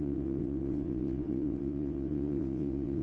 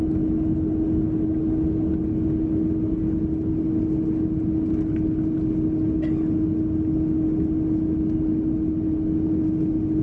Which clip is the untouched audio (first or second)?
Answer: second